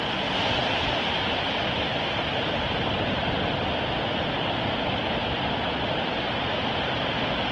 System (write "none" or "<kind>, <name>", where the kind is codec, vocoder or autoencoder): none